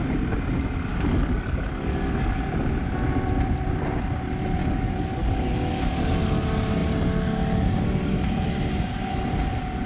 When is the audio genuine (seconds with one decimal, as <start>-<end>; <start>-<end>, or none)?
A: 0.0-0.9; 2.4-4.6; 6.1-9.9